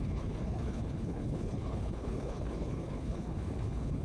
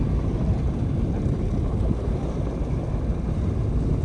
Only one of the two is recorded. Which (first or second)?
second